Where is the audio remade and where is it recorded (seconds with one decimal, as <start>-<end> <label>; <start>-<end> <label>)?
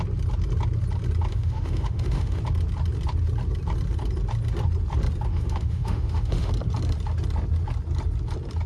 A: 0.0-1.3 recorded; 1.3-2.4 remade; 2.4-5.3 recorded; 5.3-6.5 remade; 6.5-8.7 recorded